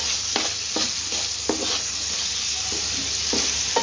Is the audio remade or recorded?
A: recorded